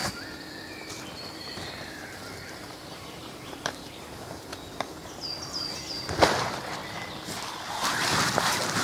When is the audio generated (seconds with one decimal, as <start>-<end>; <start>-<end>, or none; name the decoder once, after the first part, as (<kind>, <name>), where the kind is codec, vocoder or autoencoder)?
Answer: 1.3-4.5 (vocoder, BigVGAN v2); 6.1-6.8; 8.0-8.8